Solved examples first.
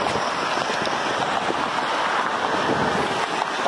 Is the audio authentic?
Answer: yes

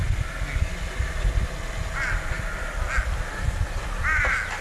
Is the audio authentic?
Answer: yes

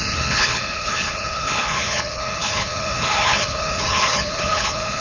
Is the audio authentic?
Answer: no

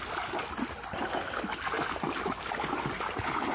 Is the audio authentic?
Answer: yes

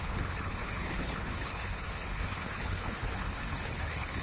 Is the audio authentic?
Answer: no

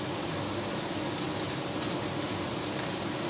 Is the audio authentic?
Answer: yes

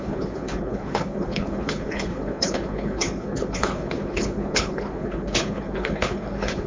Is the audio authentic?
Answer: no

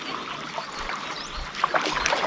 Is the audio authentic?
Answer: yes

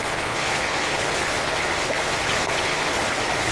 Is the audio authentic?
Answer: no